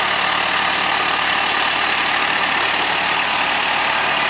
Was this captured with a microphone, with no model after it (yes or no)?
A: yes